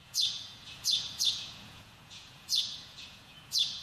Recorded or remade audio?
remade